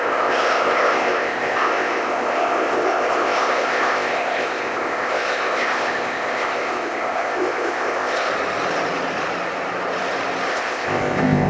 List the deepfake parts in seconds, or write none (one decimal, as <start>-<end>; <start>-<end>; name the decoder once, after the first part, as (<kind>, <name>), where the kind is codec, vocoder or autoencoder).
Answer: 0.0-8.3 (codec, ZipCodec); 10.5-11.5